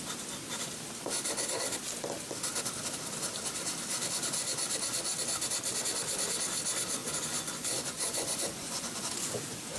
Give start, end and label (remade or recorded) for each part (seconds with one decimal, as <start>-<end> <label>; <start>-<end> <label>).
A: 0.0-7.0 recorded; 7.0-9.8 remade